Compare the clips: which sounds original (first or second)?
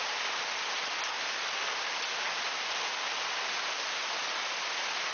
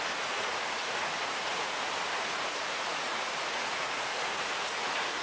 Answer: first